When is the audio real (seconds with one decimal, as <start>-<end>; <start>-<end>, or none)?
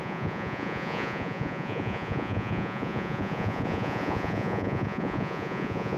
none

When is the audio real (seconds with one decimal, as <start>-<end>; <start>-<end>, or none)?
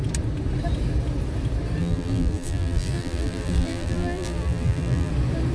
0.0-1.8; 5.1-5.5